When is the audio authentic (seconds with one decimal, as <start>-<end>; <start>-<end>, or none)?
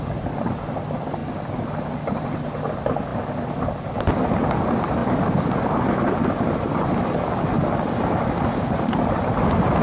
0.0-9.8